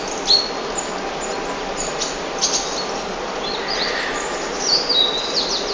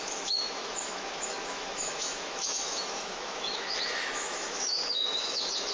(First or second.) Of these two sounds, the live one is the first